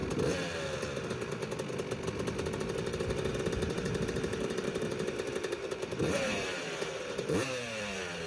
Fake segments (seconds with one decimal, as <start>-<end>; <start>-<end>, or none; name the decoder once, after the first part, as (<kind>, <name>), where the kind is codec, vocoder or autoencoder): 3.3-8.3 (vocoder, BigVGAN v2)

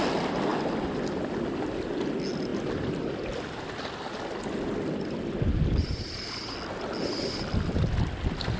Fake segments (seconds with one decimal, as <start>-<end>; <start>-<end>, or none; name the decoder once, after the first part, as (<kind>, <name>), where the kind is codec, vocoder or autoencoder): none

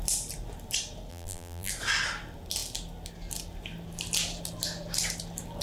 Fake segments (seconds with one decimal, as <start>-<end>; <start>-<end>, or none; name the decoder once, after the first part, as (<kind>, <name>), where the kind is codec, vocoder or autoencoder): 1.1-1.7 (vocoder, BigVGAN v2)